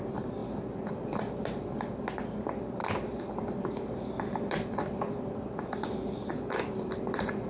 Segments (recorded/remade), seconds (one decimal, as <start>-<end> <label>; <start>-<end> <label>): 0.0-7.5 recorded